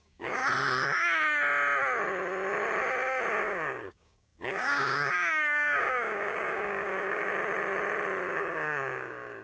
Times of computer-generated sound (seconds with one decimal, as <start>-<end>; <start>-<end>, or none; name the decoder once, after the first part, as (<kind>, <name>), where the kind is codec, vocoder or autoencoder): 0.0-0.4 (codec, DAC); 3.4-7.3; 8.4-9.4